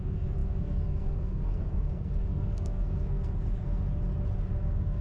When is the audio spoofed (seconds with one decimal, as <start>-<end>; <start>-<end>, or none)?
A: 0.0-4.0; 4.5-5.0